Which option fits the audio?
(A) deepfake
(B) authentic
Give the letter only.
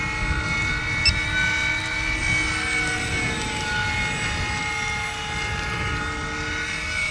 B